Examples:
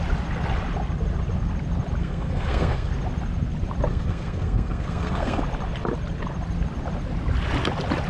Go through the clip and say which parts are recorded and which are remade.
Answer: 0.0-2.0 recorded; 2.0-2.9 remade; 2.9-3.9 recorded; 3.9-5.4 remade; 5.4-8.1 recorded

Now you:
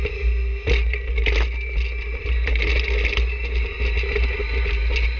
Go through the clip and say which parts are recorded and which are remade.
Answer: 0.0-5.2 recorded